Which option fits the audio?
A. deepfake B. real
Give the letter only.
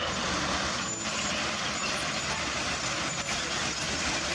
B